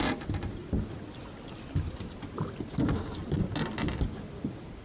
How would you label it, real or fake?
real